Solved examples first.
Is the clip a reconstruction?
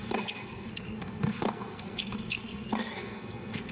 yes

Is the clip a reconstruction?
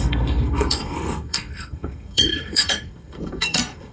yes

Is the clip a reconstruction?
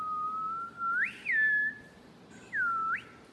no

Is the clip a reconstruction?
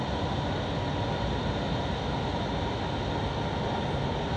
no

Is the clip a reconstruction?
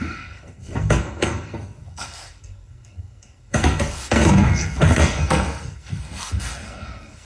yes